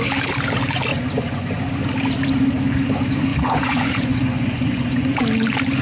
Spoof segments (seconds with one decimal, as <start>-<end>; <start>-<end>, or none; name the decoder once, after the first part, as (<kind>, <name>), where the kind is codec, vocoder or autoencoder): 0.9-1.6 (vocoder, Vocos); 3.3-5.2